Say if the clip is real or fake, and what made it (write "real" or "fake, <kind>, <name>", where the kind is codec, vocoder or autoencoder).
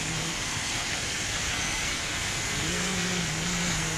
fake, codec, SNAC